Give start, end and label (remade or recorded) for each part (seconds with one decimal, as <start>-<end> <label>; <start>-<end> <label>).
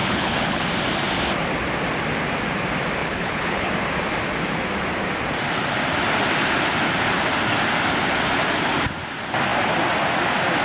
0.0-0.6 remade; 0.6-3.0 recorded; 3.0-3.7 remade; 3.7-10.6 recorded